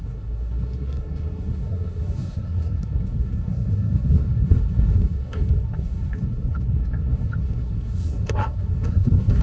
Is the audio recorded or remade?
remade